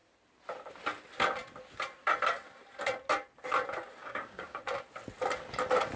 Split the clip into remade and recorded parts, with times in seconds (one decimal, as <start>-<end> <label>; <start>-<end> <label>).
0.0-4.0 recorded; 4.0-4.6 remade; 4.6-6.0 recorded